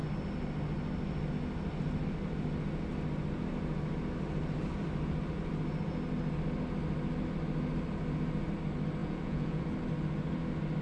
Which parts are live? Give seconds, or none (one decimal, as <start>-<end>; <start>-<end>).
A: 0.0-9.0; 9.6-10.8